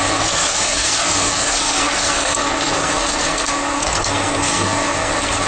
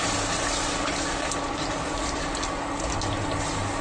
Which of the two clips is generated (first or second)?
first